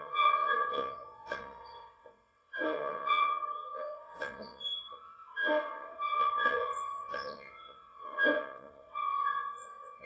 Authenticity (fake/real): fake